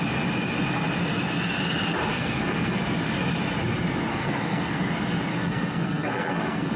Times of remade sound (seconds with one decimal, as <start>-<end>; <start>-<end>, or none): 2.1-2.8; 4.1-4.8; 5.3-6.8